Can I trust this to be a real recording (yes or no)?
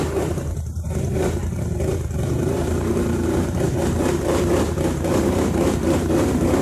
no